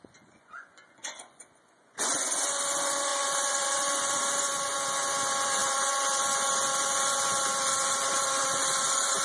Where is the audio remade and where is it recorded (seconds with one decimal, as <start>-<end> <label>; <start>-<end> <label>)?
0.0-9.2 remade

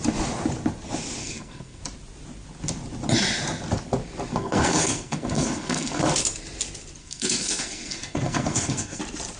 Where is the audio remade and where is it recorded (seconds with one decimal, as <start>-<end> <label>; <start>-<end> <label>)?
0.0-1.2 recorded; 1.2-1.8 remade; 1.8-4.3 recorded; 4.3-6.0 remade; 6.0-7.0 recorded; 7.0-9.0 remade; 9.0-9.4 recorded